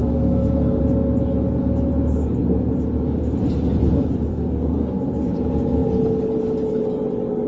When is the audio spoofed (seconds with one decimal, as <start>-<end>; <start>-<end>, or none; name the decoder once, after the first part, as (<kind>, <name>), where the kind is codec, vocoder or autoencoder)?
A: 0.0-0.8 (codec, SNAC); 4.3-5.1